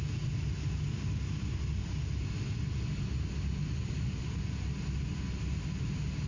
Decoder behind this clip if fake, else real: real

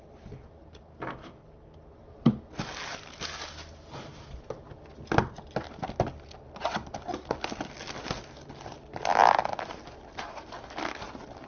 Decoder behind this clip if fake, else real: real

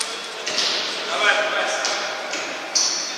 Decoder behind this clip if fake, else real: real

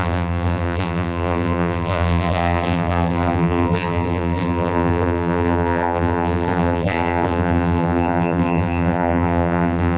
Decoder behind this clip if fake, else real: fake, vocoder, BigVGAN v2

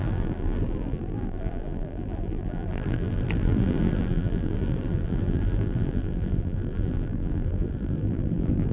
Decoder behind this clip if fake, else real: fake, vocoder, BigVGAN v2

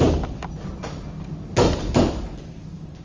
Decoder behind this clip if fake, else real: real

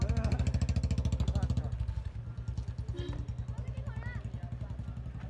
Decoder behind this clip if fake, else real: real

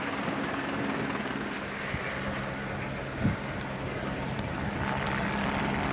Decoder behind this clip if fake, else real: real